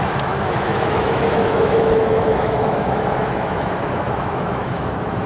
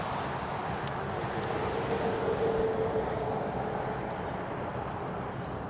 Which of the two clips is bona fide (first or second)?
second